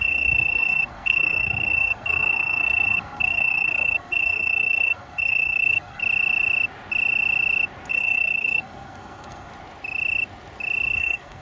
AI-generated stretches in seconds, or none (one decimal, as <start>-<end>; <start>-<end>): 0.0-6.0; 7.9-9.5; 11.0-11.4